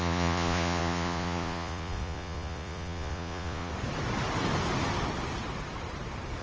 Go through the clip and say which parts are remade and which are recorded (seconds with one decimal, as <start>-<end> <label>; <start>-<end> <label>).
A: 0.0-3.7 remade; 3.7-6.4 recorded